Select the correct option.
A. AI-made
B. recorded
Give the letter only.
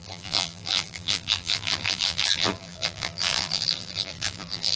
A